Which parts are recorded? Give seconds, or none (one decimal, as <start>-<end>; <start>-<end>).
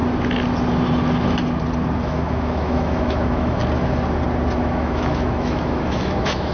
0.0-2.0; 3.6-4.6